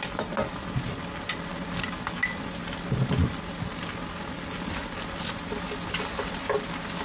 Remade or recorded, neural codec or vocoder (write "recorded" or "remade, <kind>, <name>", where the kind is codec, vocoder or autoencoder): recorded